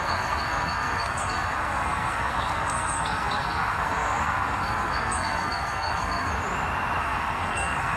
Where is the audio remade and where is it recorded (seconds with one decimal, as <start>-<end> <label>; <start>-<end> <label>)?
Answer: 0.0-6.3 remade; 6.3-7.0 recorded; 7.0-8.0 remade